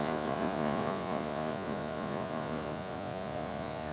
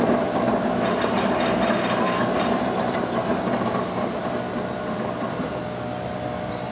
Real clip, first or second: second